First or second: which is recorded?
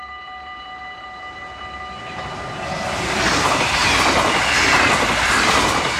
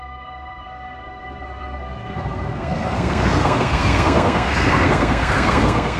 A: first